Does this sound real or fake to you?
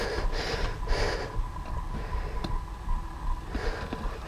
real